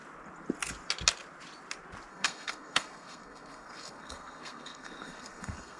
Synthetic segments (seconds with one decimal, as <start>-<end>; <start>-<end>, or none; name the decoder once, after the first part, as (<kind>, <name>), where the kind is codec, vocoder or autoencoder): 2.1-5.8 (codec, SNAC)